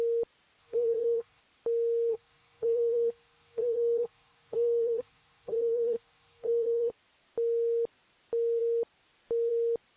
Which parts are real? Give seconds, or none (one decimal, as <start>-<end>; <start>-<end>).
0.0-0.6; 1.4-2.1; 6.9-10.0